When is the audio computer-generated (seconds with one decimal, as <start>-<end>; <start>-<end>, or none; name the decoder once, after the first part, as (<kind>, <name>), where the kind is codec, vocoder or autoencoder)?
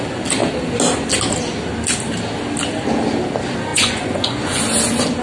3.7-4.6 (vocoder, Vocos)